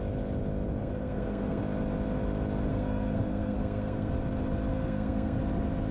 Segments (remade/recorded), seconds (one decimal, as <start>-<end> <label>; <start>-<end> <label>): 0.0-0.8 recorded; 0.8-1.6 remade; 1.6-2.7 recorded; 2.7-4.1 remade; 4.1-4.7 recorded; 4.7-5.4 remade; 5.4-5.9 recorded